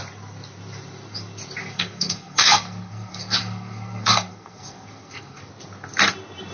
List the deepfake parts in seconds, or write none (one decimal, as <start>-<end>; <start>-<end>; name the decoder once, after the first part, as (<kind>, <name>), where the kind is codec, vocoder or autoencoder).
1.6-5.5 (codec, SNAC)